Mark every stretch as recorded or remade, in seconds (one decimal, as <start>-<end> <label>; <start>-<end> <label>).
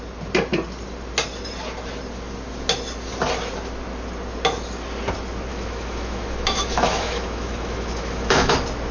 0.0-5.5 recorded; 5.5-8.5 remade; 8.5-8.9 recorded